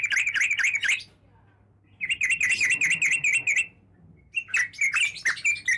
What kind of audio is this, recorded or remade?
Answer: recorded